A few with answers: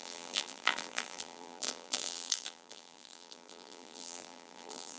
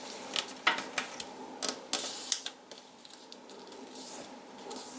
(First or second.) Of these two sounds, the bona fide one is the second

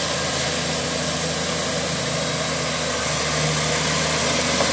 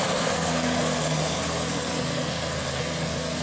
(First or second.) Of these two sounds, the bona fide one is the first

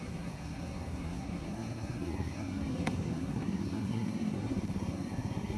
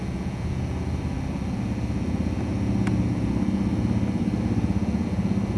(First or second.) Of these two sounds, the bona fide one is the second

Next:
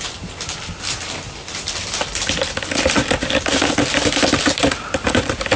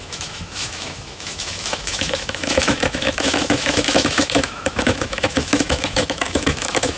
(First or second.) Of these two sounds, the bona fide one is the first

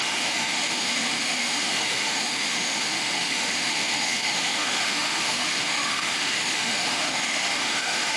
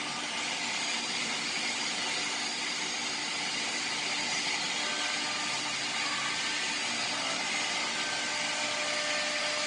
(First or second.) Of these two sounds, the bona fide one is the second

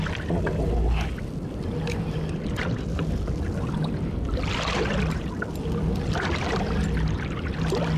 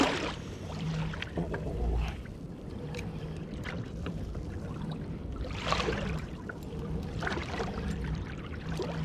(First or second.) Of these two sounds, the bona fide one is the first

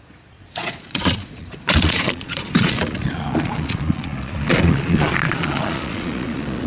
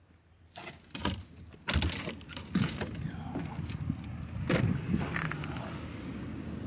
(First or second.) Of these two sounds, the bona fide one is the second